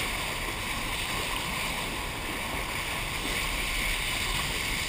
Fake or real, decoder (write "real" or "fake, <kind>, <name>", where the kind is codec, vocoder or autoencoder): real